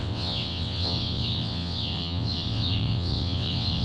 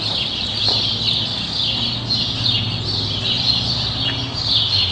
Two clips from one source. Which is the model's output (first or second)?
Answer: first